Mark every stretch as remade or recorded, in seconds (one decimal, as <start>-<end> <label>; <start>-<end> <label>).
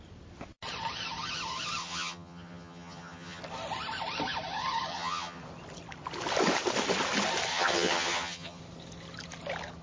0.0-1.8 recorded; 1.8-3.4 remade; 3.4-4.9 recorded; 4.9-5.4 remade; 5.4-7.5 recorded; 7.5-8.6 remade; 8.6-9.8 recorded